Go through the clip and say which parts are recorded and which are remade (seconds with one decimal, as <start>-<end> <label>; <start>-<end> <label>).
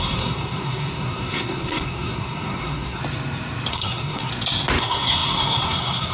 0.0-3.0 remade; 3.0-3.7 recorded; 3.7-4.3 remade; 4.3-4.8 recorded; 4.8-6.1 remade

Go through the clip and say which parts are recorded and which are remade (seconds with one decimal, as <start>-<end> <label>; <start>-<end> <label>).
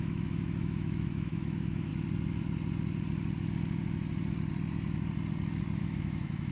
0.0-1.9 remade; 1.9-5.8 recorded; 5.8-6.5 remade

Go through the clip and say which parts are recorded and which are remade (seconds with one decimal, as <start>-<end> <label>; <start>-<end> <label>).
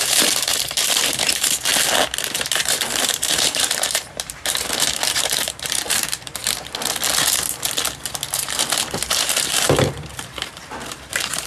0.0-1.7 remade; 1.7-2.3 recorded; 2.3-6.4 remade; 6.4-8.8 recorded; 8.8-11.5 remade